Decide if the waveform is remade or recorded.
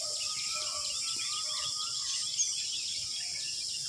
recorded